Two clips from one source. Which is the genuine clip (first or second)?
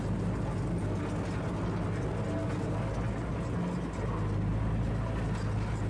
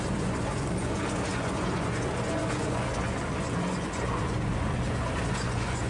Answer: first